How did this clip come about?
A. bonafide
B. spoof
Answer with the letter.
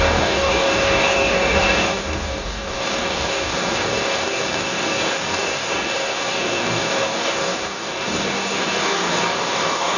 B